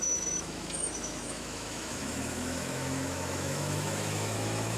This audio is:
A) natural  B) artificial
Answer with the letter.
B